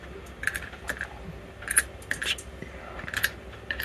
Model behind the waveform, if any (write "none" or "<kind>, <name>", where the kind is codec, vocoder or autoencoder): none